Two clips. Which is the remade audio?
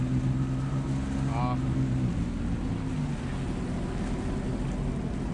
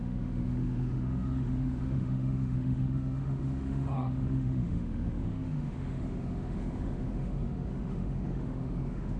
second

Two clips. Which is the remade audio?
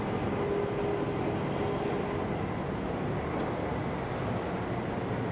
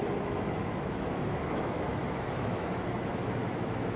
second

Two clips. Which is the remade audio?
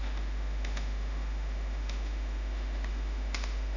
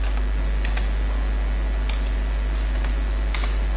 first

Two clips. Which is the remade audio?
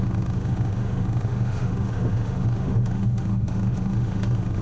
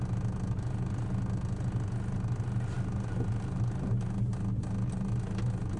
first